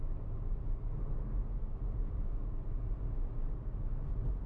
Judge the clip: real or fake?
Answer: real